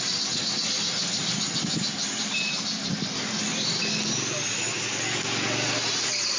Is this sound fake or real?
real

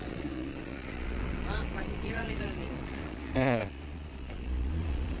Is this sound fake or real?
fake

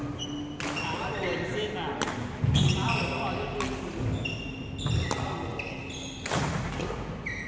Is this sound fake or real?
real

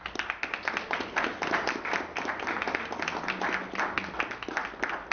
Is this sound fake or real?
real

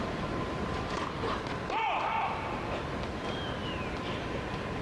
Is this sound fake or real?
real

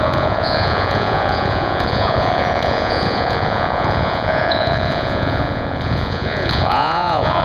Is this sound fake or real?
fake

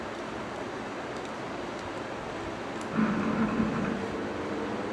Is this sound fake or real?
real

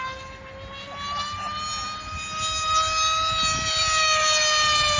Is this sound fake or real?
real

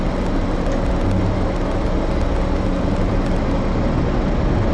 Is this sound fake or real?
real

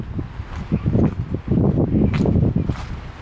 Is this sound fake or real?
real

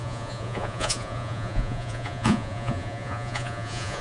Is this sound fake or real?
fake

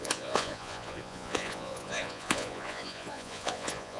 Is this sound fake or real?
fake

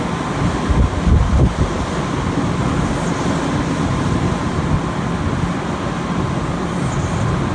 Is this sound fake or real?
real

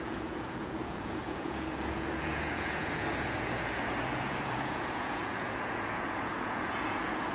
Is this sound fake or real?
fake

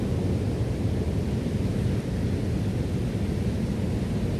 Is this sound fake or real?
real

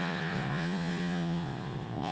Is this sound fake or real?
fake